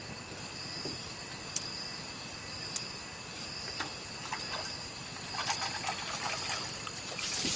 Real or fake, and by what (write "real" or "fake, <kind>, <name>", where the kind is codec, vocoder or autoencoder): real